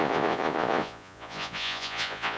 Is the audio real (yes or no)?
no